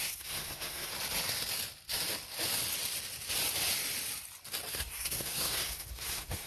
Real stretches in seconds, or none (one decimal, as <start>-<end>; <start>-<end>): 0.9-4.7